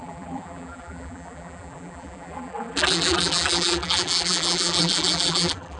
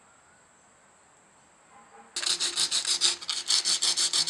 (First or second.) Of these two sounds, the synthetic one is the first